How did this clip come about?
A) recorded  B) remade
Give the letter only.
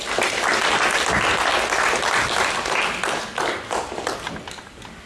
A